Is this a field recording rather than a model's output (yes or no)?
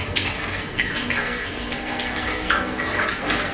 no